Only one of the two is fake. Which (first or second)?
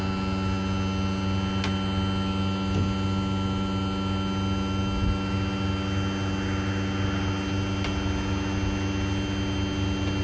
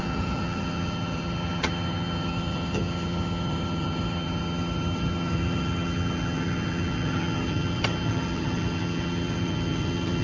second